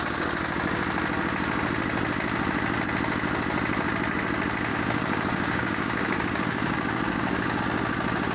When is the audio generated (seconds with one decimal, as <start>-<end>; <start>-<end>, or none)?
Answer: 4.7-7.6